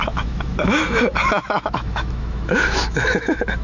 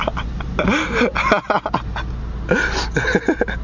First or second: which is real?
second